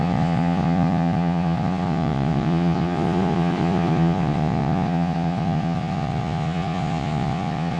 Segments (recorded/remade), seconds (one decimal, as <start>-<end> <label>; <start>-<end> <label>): 0.0-7.8 remade